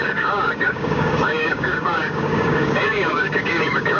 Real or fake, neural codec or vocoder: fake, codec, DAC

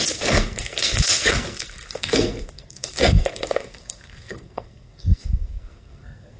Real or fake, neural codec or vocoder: fake, codec, SNAC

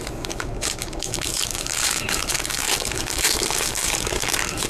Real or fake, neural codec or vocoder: fake, codec, DAC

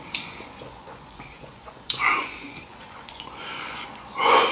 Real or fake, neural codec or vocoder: fake, vocoder, Vocos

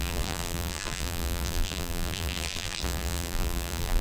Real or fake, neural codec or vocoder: fake, vocoder, BigVGAN v2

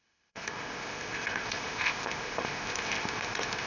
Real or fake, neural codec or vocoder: fake, codec, ZipCodec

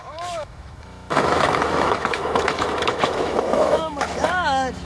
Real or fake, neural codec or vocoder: fake, autoencoder, DAC-VAE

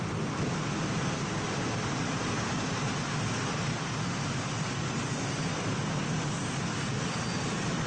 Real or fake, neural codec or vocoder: real